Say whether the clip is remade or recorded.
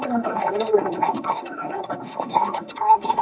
remade